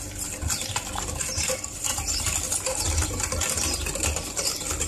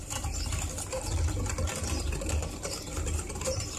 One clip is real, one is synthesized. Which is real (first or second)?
first